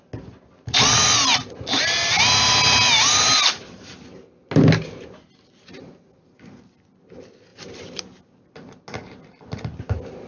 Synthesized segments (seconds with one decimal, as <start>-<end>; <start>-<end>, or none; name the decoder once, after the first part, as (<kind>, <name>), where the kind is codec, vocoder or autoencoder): 7.5-8.0 (vocoder, BigVGAN v2)